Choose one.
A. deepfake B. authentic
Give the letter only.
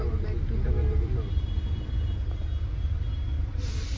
B